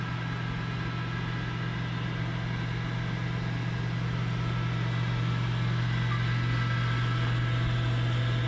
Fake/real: real